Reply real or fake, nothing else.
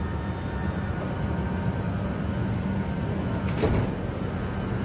real